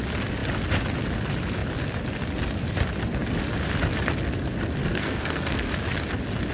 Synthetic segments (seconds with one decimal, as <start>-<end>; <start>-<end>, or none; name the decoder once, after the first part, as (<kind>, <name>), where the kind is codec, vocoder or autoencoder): 4.9-5.7 (codec, SNAC)